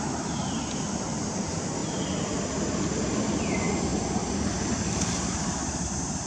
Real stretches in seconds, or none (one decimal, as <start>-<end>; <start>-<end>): 1.8-2.8; 3.9-4.8